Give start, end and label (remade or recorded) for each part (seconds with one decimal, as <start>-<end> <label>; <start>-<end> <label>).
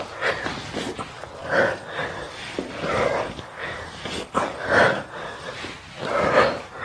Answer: 0.0-1.4 recorded; 1.4-5.5 remade; 5.5-6.8 recorded